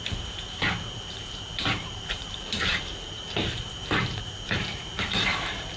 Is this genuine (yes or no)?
no